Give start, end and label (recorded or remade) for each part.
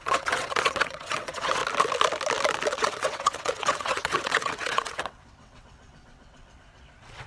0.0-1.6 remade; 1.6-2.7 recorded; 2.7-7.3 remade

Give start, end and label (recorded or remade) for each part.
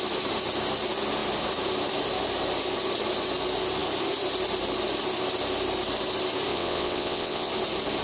0.0-6.5 recorded; 6.5-7.5 remade; 7.5-8.0 recorded